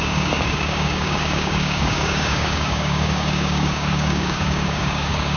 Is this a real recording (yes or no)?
no